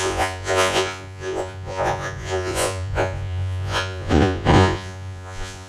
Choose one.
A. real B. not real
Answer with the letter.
B